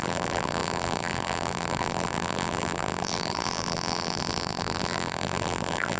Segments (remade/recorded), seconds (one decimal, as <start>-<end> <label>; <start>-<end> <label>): 0.0-6.0 remade